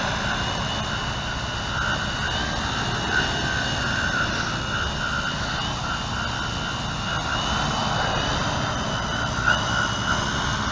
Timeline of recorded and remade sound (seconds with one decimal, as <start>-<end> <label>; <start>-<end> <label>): 0.0-10.7 recorded